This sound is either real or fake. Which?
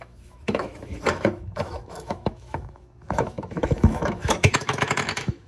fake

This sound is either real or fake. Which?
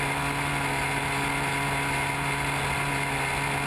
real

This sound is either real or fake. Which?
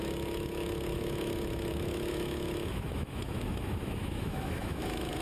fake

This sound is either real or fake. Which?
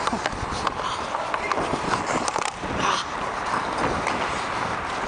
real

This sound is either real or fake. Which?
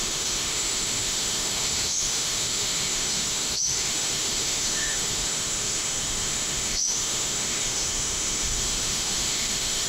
fake